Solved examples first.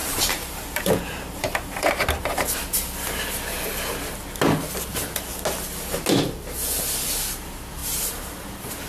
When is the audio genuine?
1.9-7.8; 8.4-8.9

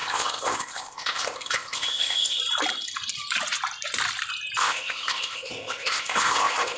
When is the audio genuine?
2.4-4.6

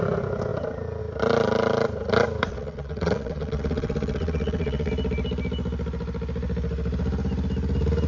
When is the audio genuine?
0.0-2.5; 4.9-8.1

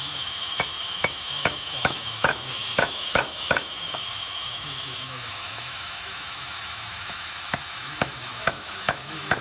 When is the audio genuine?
none